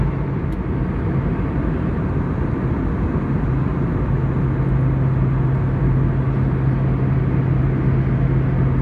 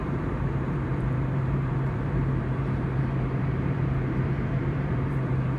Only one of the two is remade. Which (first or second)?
second